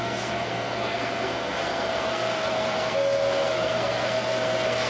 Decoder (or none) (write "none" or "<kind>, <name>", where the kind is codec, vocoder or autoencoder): codec, SNAC